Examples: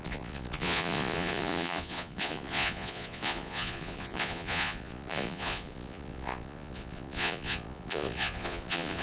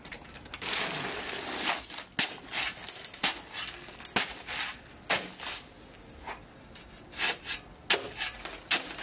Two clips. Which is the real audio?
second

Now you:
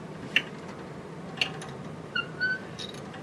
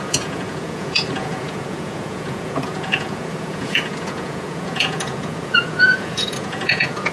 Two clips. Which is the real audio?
first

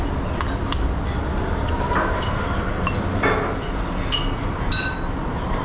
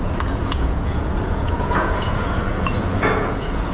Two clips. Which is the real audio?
first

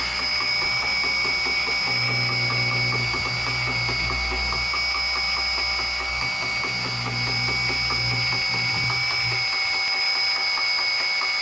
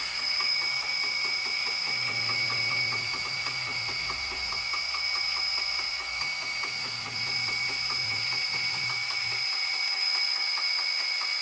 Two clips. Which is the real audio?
first